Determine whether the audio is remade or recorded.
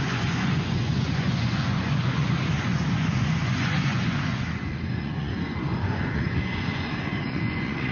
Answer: remade